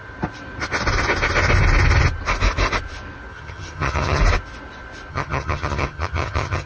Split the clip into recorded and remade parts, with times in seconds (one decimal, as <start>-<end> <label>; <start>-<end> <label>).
0.0-3.3 recorded; 3.3-4.2 remade; 4.2-5.1 recorded; 5.1-6.7 remade